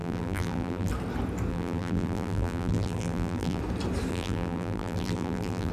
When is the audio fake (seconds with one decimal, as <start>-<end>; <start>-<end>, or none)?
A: 0.0-0.9; 1.5-3.6; 4.1-5.7

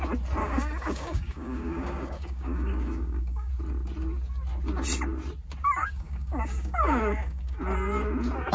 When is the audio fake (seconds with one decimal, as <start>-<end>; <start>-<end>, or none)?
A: 0.4-3.5; 5.8-7.6

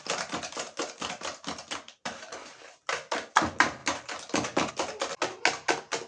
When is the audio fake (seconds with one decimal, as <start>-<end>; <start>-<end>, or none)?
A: none

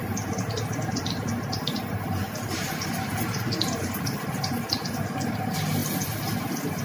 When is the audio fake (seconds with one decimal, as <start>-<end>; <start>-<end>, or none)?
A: none

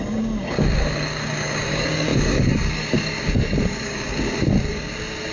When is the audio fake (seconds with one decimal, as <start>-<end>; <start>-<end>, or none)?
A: 0.0-5.3

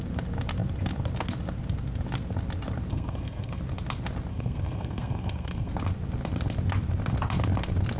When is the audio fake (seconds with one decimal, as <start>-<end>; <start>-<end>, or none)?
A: 2.9-3.6; 4.3-5.7

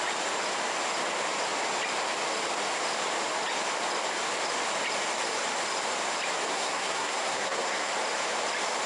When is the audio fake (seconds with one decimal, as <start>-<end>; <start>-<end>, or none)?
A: 6.5-7.9